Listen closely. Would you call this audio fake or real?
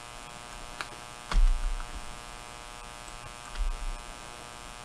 real